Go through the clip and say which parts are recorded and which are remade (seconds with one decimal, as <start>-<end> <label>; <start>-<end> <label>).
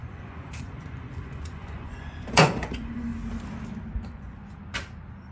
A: 0.0-3.1 remade; 3.1-4.1 recorded; 4.1-4.6 remade; 4.6-5.3 recorded